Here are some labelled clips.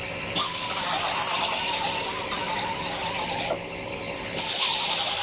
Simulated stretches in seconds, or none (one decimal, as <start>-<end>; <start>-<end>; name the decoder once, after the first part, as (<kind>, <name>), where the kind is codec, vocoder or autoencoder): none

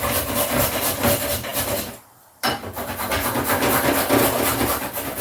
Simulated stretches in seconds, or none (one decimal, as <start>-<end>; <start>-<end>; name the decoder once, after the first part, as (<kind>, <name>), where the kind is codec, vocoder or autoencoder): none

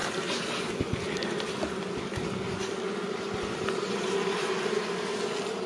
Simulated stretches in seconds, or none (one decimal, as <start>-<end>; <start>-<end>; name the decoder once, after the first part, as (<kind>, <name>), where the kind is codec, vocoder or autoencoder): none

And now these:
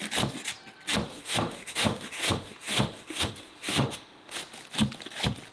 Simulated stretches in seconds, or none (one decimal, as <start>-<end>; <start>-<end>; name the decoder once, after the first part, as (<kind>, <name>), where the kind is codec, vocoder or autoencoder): 1.1-4.4 (autoencoder, DAC-VAE)